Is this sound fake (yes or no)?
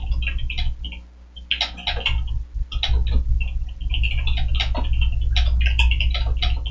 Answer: no